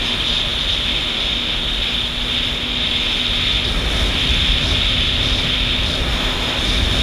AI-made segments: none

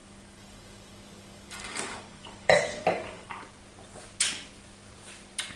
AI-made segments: 0.0-3.4 (codec, DAC)

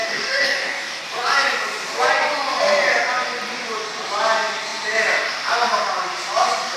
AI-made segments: 0.0-1.0 (codec, DAC)

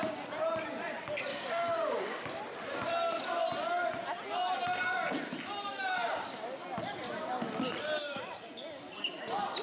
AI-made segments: 1.3-2.4 (codec, DAC)